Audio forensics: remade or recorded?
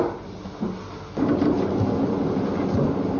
recorded